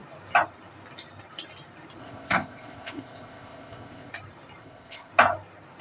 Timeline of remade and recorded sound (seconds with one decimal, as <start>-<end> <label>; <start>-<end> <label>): 0.0-2.0 recorded; 2.0-4.1 remade; 4.1-4.6 recorded; 4.6-5.1 remade; 5.1-5.8 recorded

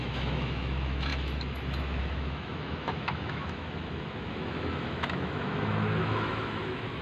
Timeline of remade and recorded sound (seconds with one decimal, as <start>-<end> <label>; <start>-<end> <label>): 0.0-7.0 remade